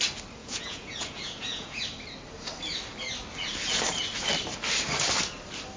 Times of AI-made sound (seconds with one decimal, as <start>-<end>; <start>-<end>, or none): 0.4-1.8